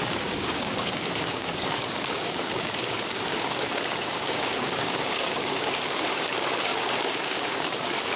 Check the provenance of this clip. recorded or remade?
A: remade